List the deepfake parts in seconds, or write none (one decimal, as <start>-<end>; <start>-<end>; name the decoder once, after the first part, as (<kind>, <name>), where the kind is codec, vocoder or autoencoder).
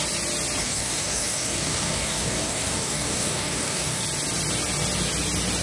0.6-4.0 (codec, DAC)